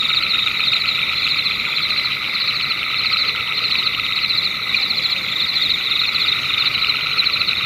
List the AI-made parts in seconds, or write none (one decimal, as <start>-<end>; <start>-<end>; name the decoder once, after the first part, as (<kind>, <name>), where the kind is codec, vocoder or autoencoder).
3.2-6.2 (vocoder, BigVGAN v2); 6.7-7.7